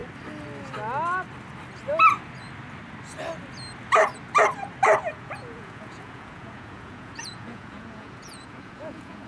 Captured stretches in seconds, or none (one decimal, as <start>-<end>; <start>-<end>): 0.0-5.1